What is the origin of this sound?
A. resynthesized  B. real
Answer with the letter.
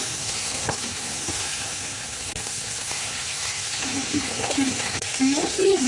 A